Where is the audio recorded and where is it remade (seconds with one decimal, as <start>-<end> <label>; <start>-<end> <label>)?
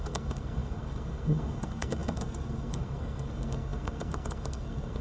0.0-5.0 remade